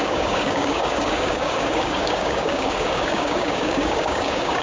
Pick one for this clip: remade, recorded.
remade